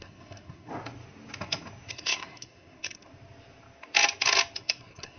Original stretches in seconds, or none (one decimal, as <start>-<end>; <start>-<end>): 0.7-1.9; 3.1-4.6